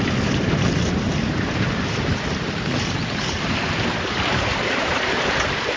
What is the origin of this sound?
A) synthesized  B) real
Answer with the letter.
A